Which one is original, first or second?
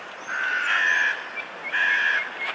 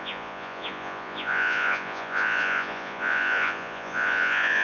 first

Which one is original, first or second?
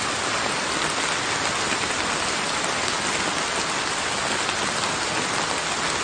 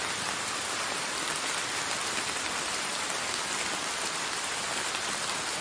first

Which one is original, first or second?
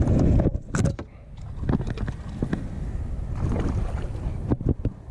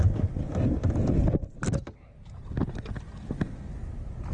second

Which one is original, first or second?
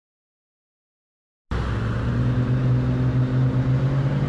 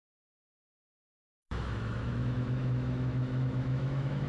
first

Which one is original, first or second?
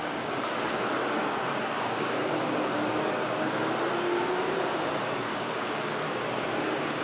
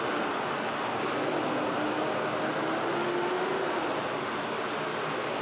second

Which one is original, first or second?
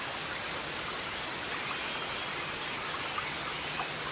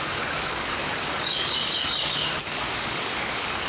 first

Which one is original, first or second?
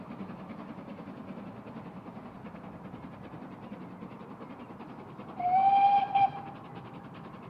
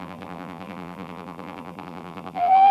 first